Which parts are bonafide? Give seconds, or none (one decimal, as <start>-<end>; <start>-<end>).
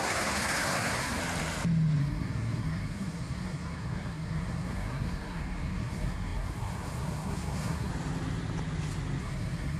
1.2-2.0; 7.9-9.2